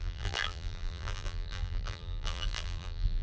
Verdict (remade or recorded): remade